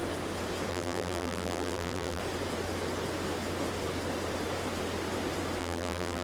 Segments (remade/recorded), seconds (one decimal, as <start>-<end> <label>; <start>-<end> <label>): 0.0-0.7 recorded; 0.7-2.2 remade; 2.2-5.6 recorded; 5.6-6.2 remade